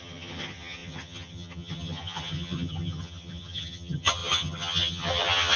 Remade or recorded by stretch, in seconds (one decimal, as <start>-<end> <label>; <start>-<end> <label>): 0.0-5.6 remade